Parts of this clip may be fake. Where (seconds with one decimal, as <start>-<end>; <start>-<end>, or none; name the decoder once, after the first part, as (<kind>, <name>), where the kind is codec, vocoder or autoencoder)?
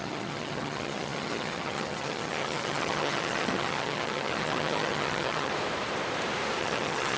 0.0-5.5 (vocoder, HiFi-GAN); 6.6-7.2